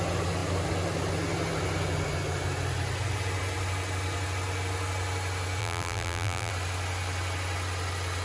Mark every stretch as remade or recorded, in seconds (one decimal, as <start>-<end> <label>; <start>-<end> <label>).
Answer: 0.0-5.6 recorded; 5.6-6.5 remade; 6.5-8.2 recorded